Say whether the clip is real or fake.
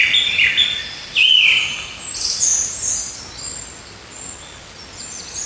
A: real